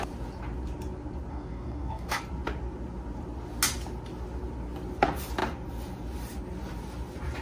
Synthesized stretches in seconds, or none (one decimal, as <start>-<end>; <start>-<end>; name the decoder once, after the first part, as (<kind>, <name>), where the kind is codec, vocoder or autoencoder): 1.3-2.2 (codec, DAC)

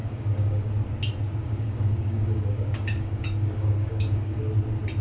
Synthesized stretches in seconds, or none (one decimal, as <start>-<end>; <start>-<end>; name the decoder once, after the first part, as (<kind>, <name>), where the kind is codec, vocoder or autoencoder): 0.0-0.7 (codec, DAC); 1.4-4.4